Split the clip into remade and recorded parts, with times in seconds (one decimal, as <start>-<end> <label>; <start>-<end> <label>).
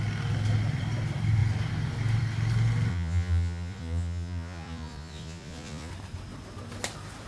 0.0-2.9 recorded; 2.9-5.9 remade; 5.9-7.3 recorded